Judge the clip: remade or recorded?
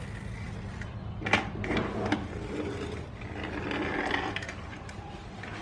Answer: recorded